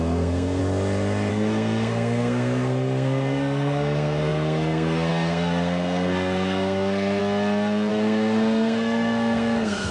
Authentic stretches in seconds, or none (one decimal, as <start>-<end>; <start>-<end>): 0.6-1.3; 7.2-7.9